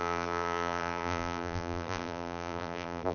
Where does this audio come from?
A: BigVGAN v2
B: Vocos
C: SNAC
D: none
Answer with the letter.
A